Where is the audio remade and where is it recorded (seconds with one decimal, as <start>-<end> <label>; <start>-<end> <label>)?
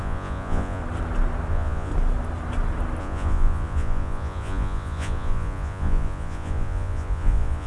0.0-0.8 remade; 0.8-1.5 recorded; 1.5-1.9 remade; 1.9-3.0 recorded; 3.0-7.7 remade